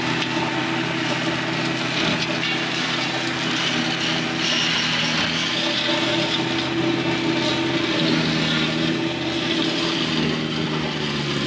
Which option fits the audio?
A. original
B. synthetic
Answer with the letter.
A